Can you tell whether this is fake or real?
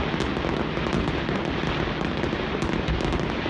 real